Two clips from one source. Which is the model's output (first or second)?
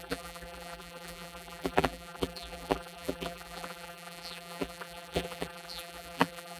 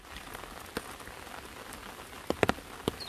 first